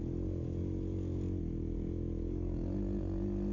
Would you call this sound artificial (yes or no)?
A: no